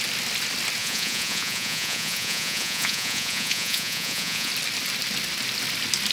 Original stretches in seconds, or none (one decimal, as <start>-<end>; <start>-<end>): 0.0-0.8; 4.5-6.1